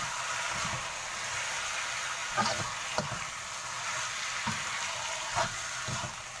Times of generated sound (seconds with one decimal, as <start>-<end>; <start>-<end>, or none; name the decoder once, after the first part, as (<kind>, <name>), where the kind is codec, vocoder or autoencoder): none